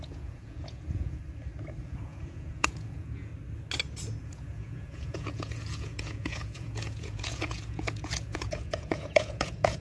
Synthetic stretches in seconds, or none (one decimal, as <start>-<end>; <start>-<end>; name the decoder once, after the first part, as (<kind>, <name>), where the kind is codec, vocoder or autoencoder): 0.0-1.2 (vocoder, Vocos); 1.8-3.3; 4.2-9.8